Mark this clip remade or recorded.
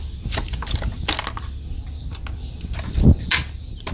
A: recorded